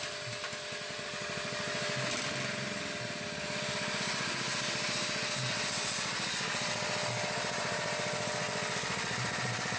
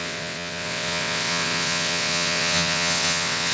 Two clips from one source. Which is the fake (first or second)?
second